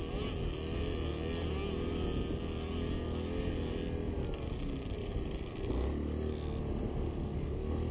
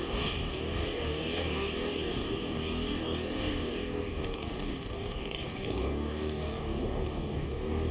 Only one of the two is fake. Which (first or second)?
second